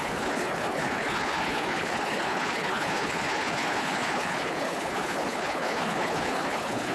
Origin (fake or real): fake